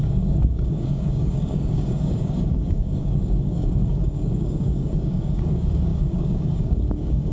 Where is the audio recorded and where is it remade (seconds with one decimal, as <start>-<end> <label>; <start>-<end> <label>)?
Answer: 0.0-7.3 remade

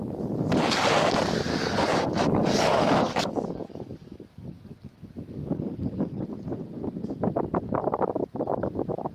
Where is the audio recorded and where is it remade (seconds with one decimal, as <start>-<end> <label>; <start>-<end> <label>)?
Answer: 0.0-1.5 recorded; 1.5-6.2 remade; 6.2-9.1 recorded

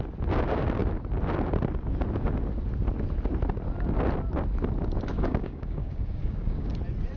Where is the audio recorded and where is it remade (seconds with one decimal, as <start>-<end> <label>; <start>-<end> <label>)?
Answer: 0.0-5.1 recorded; 5.1-6.7 remade; 6.7-7.2 recorded

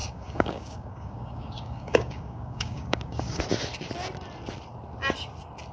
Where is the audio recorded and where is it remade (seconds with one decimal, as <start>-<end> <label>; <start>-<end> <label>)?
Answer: 0.0-3.4 remade; 3.4-5.7 recorded

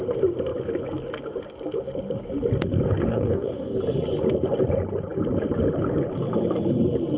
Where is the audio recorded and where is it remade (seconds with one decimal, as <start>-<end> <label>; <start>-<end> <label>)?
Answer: 0.0-3.1 recorded; 3.1-3.8 remade; 3.8-7.2 recorded

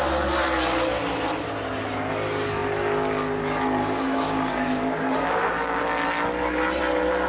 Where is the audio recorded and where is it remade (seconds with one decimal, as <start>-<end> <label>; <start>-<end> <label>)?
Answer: 0.0-3.8 recorded; 3.8-5.8 remade; 5.8-7.3 recorded

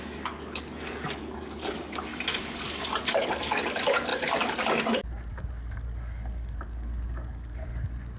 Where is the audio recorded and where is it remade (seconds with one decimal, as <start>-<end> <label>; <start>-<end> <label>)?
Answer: 0.0-2.1 remade; 2.1-3.0 recorded; 3.0-4.1 remade; 4.1-5.3 recorded; 5.3-8.2 remade